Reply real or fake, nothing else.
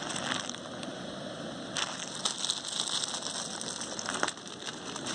real